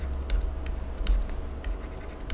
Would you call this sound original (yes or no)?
yes